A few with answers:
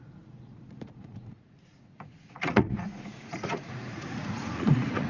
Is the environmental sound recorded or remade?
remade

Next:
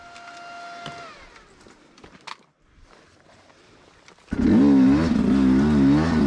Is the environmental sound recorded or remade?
recorded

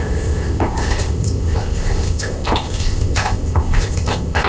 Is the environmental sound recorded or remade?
remade